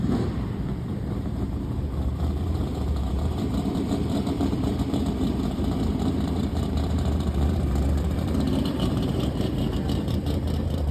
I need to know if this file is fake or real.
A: fake